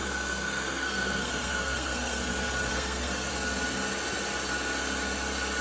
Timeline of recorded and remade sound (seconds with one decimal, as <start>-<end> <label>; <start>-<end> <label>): 0.0-2.2 remade; 2.2-2.7 recorded; 2.7-3.3 remade; 3.3-5.6 recorded